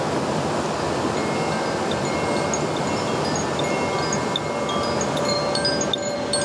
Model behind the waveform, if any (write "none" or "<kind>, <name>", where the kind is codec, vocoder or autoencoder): none